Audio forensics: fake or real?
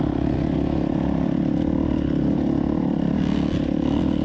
real